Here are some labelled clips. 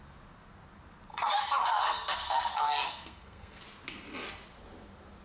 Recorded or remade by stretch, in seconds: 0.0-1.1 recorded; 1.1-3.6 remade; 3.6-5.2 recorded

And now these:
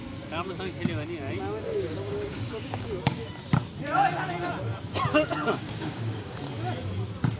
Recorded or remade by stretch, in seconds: 0.0-1.6 recorded; 1.6-3.3 remade; 3.3-5.1 recorded; 5.1-6.4 remade; 6.4-7.4 recorded